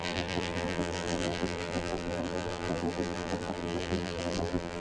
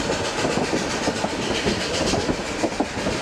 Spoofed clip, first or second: first